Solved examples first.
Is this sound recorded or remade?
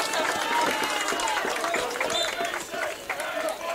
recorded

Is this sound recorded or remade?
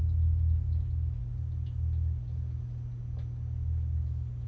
recorded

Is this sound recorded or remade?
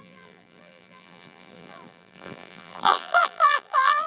remade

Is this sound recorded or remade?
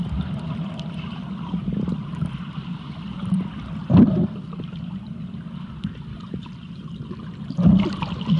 remade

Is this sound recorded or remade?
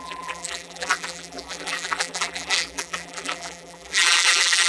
remade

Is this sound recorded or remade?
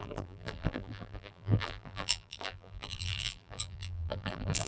remade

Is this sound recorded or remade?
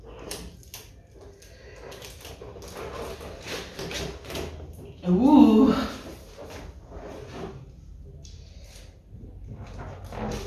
recorded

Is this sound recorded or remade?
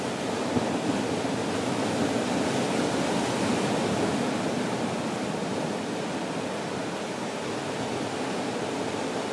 recorded